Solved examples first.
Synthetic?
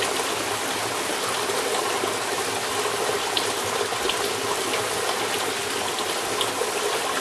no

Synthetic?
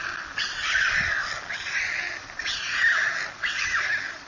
no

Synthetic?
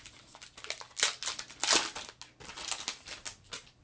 no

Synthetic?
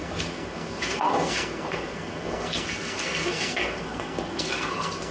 yes